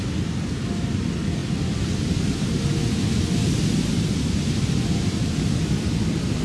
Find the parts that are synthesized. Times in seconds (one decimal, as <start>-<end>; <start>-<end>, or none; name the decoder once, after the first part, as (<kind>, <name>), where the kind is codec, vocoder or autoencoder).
none